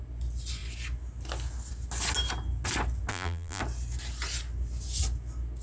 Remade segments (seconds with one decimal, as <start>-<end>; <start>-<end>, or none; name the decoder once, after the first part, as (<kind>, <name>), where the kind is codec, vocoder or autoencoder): 3.1-3.6 (vocoder, BigVGAN v2)